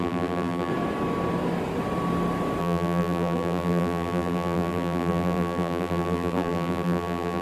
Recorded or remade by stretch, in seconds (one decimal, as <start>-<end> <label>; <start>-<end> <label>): 0.0-0.7 remade; 0.7-2.6 recorded; 2.6-7.4 remade